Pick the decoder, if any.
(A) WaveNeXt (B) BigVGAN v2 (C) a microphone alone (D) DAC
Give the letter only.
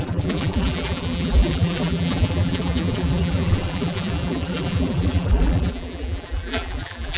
B